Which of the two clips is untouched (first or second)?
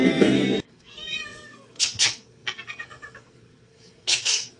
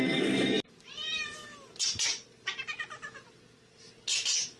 second